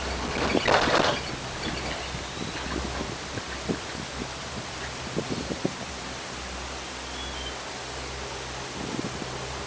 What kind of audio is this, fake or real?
real